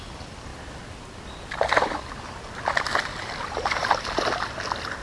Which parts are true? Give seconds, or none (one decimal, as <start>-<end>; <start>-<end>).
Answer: 0.0-0.5; 2.1-5.0